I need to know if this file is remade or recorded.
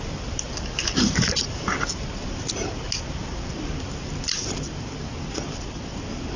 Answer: recorded